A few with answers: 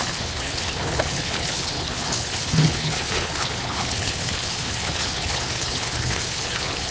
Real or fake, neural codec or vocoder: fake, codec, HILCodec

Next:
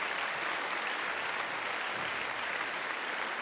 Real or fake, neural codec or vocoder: real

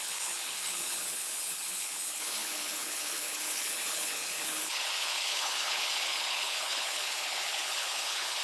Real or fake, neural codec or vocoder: fake, codec, HILCodec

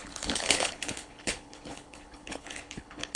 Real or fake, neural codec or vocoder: fake, codec, HILCodec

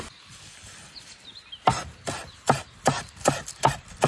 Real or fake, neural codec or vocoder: real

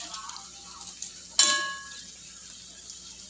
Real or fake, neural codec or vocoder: real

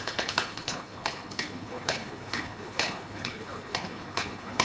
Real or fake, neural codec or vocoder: fake, codec, HILCodec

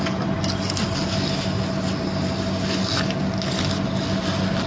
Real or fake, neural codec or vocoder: real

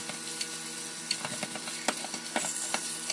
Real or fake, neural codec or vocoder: real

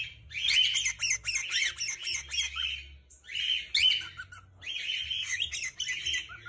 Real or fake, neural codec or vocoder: real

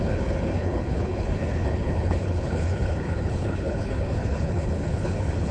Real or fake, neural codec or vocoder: fake, codec, HILCodec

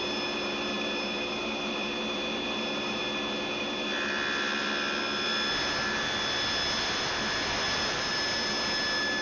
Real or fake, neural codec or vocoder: real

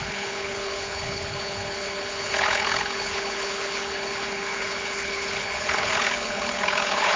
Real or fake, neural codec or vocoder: fake, codec, HILCodec